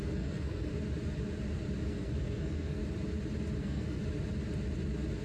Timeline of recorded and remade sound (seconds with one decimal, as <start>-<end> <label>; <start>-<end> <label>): 0.0-0.7 remade; 0.7-1.9 recorded; 1.9-2.8 remade; 2.8-3.6 recorded; 3.6-4.0 remade; 4.0-5.2 recorded